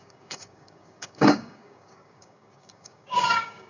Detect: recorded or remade remade